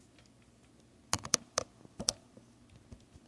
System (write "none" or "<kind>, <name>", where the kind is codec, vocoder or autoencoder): none